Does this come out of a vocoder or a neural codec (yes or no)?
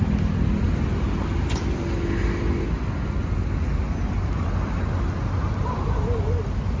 no